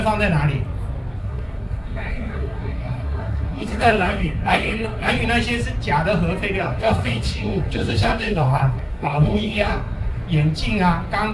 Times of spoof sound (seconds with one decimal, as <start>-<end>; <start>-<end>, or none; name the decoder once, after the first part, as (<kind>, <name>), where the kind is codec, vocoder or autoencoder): 1.2-5.1 (codec, SNAC); 6.6-10.2